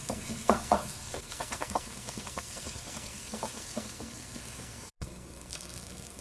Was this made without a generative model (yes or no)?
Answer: no